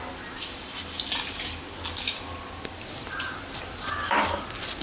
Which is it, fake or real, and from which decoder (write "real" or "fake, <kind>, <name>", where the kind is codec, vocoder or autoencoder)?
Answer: real